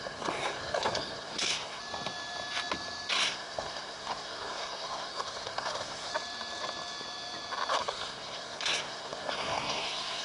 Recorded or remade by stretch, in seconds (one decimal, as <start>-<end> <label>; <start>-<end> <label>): 0.0-1.8 remade; 1.8-3.1 recorded; 3.1-6.1 remade; 6.1-7.7 recorded; 7.7-10.2 remade